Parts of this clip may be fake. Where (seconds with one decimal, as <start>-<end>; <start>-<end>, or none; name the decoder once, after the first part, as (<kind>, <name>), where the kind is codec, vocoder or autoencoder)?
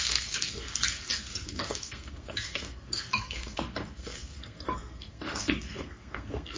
0.0-6.6 (codec, SNAC)